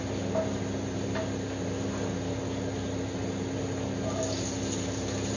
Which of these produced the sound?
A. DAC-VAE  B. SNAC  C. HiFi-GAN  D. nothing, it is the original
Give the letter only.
D